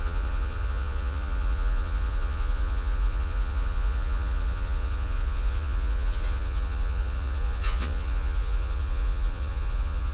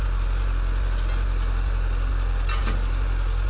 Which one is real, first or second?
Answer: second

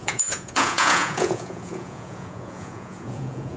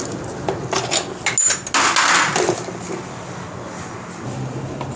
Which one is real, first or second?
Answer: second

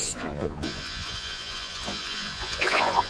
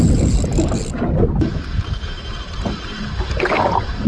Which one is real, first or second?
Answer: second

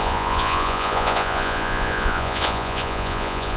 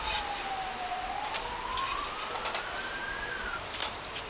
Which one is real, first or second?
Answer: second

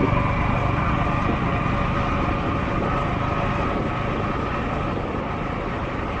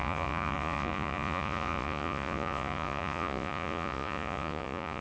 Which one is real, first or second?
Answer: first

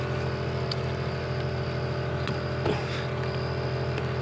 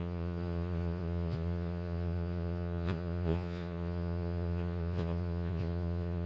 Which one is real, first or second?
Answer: first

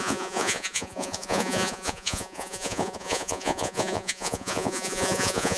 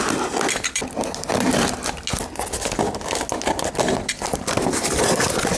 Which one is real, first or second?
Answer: second